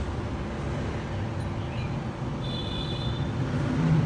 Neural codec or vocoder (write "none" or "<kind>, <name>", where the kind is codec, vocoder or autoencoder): none